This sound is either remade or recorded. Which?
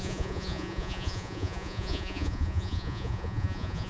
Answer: remade